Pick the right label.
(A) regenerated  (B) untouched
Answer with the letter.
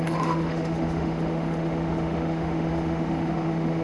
A